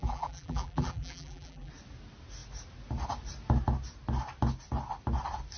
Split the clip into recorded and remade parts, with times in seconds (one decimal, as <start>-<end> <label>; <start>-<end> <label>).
0.0-1.7 remade; 1.7-5.6 recorded